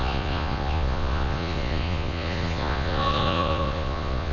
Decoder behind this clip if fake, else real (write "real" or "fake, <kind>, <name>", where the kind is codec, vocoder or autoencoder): fake, vocoder, Vocos